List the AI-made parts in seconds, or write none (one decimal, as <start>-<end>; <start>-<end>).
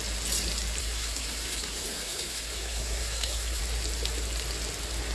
0.8-3.6